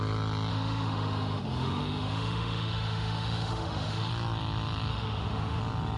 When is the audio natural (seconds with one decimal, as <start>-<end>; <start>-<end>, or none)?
0.0-0.5; 4.1-4.9; 5.6-6.0